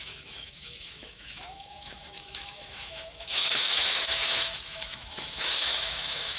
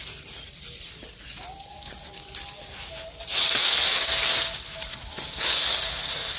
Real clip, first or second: second